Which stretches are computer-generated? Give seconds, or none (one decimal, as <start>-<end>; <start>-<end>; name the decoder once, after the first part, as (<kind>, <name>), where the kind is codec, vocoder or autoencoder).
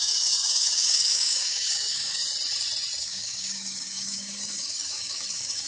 0.0-2.2 (codec, DAC); 3.0-5.7